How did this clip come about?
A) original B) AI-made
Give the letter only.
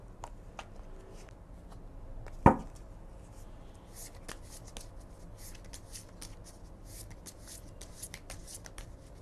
A